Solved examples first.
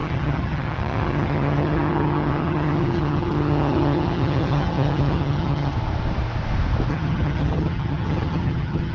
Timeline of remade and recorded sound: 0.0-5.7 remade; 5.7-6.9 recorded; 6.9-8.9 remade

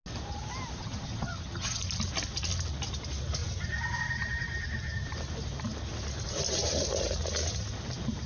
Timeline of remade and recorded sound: 0.0-0.8 recorded; 0.8-1.8 remade; 1.8-8.3 recorded

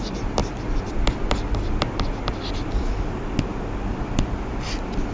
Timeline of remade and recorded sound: 0.0-5.1 recorded